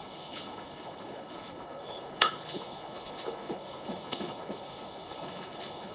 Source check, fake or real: fake